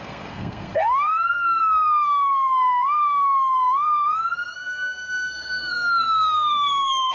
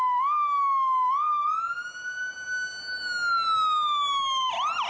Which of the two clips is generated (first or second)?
first